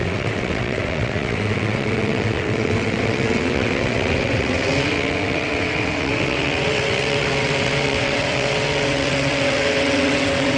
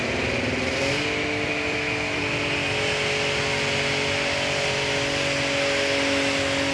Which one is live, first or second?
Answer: second